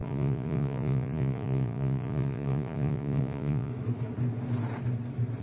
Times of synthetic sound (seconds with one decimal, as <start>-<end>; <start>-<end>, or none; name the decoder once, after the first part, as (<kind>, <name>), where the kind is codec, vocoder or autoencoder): 0.0-3.7 (vocoder, Vocos)